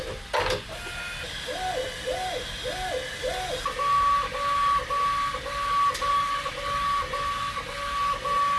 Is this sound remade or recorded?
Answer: recorded